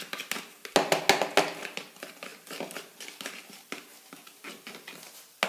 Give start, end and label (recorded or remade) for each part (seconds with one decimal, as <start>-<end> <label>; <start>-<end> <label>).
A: 0.0-5.5 recorded